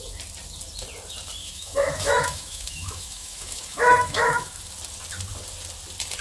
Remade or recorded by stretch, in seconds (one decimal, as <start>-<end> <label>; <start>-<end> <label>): 0.0-1.4 recorded; 1.4-4.6 remade; 4.6-6.2 recorded